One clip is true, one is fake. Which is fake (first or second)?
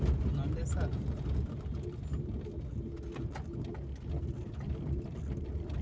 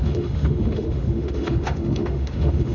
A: second